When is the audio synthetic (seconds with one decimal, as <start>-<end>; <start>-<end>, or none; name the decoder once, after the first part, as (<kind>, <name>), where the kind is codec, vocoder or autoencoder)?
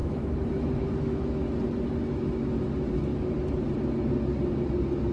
0.0-1.5 (autoencoder, DAC-VAE)